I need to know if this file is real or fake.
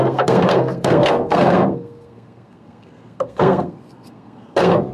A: fake